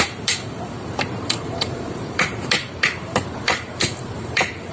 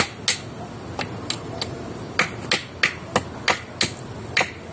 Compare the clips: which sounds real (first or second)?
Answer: second